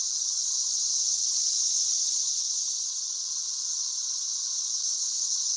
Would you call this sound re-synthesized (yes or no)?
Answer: no